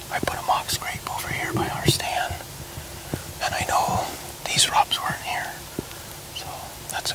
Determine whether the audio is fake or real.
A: real